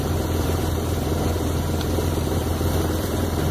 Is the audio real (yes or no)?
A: no